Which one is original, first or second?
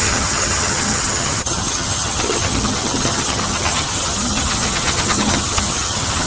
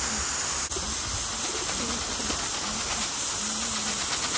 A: second